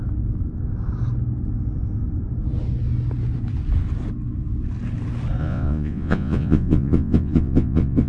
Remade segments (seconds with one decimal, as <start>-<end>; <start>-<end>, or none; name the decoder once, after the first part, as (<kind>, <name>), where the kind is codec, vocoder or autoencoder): 5.4-8.1 (vocoder, Vocos)

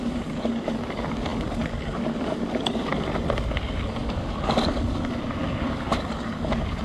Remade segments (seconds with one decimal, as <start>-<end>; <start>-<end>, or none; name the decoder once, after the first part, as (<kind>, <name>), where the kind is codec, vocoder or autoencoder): 0.0-2.9 (codec, DAC); 3.5-6.8